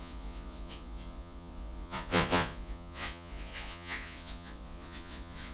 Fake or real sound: fake